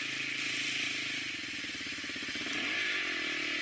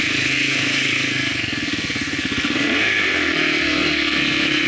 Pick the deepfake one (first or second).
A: second